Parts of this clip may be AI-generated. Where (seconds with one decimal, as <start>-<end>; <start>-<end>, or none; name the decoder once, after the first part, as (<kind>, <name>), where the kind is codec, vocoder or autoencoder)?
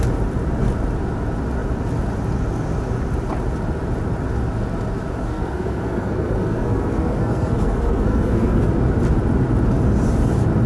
5.2-8.7 (codec, SNAC)